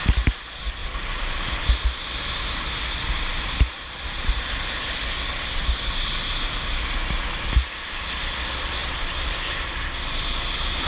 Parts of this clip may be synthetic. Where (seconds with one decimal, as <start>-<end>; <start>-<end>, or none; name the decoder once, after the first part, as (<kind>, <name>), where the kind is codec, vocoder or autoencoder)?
0.8-1.6 (vocoder, BigVGAN v2); 3.3-5.0; 8.8-9.7